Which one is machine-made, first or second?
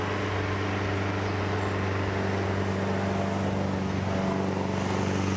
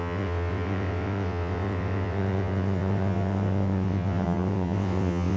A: second